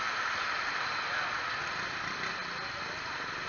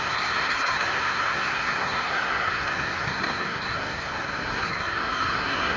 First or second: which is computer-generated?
second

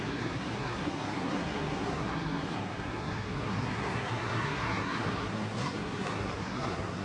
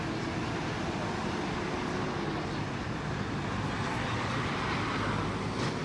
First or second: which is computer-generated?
first